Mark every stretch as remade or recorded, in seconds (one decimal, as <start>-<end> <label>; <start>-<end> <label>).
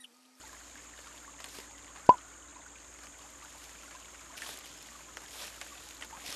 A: 0.0-6.4 recorded